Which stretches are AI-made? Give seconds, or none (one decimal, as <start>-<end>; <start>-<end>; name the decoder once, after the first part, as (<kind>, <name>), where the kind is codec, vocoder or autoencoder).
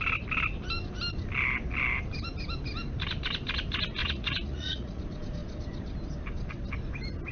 4.0-5.0 (vocoder, Vocos)